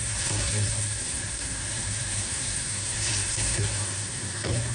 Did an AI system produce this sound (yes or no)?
yes